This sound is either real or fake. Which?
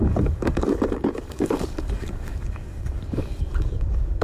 fake